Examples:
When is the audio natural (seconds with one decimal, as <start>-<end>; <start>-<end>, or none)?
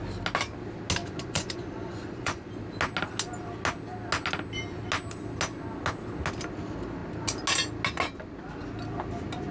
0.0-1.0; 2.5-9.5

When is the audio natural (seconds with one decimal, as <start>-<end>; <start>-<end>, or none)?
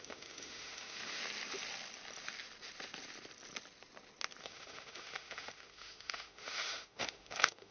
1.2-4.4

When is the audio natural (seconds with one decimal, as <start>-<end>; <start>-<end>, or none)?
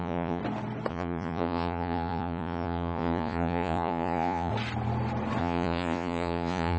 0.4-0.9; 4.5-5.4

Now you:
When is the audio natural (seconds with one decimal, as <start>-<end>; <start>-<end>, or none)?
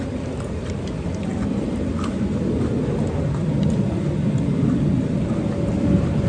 1.3-3.9